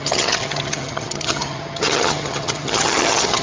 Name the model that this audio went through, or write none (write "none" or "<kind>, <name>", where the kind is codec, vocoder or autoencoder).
vocoder, HiFi-GAN